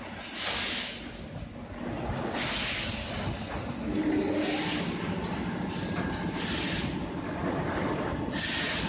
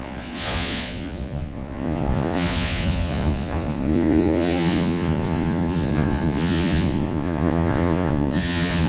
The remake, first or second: second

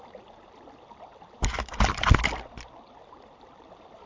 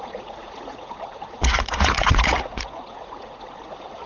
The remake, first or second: second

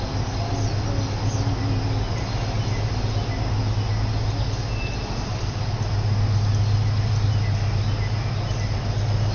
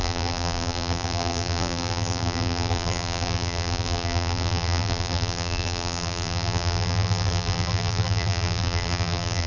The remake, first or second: second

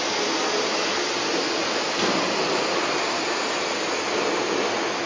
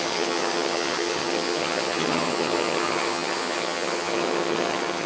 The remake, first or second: second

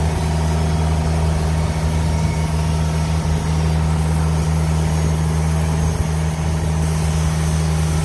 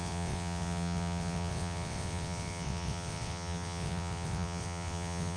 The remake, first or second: second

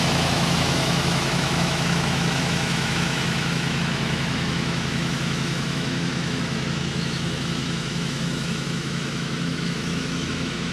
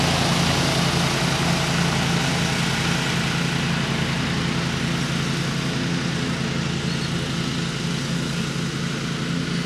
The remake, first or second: first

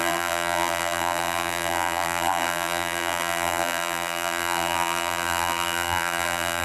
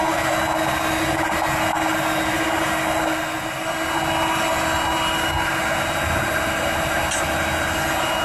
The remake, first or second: first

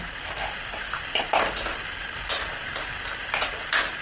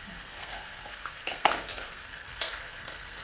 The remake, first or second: second